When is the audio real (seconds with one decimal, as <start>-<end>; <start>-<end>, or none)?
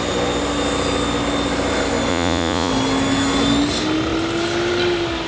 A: 0.0-2.1; 2.7-5.3